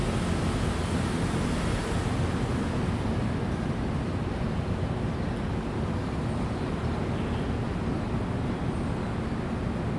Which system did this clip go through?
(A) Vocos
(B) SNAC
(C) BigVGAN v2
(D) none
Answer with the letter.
D